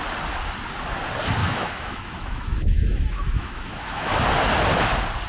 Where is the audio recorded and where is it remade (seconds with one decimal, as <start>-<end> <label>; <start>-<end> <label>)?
0.0-1.4 recorded; 1.4-4.1 remade; 4.1-5.3 recorded